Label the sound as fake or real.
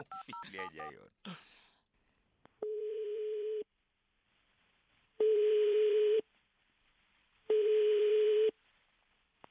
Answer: fake